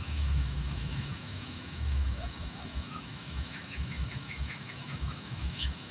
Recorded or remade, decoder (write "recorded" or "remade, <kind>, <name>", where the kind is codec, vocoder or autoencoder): remade, autoencoder, DAC-VAE